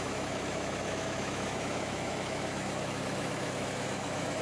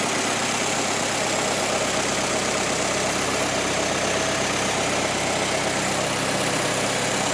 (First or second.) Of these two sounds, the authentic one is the second